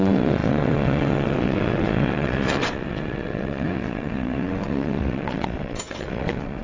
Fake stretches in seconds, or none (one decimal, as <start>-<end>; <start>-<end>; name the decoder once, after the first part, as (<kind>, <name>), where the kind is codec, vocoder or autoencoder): 0.0-6.6 (vocoder, WaveNeXt)